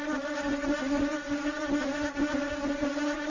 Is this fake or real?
real